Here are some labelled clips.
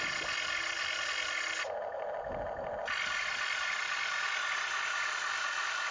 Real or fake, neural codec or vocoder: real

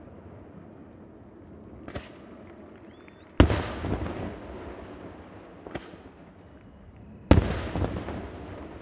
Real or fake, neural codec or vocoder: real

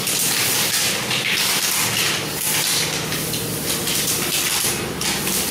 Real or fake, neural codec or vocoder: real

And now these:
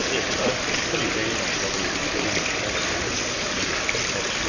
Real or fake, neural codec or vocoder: fake, vocoder, BigVGAN v2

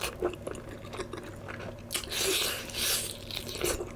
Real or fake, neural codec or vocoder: real